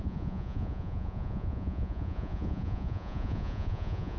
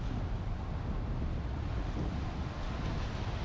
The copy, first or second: first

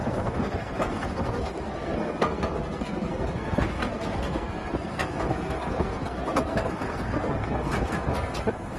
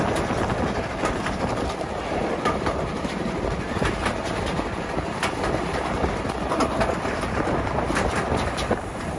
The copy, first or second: first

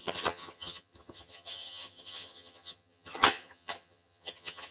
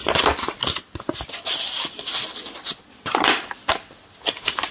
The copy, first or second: first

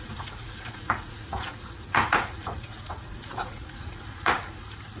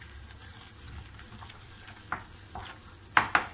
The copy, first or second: first